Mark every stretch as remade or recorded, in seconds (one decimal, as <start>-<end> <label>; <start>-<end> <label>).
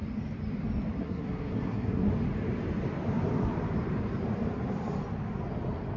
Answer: 0.0-1.0 recorded; 1.0-2.1 remade; 2.1-6.0 recorded